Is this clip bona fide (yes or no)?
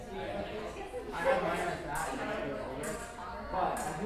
yes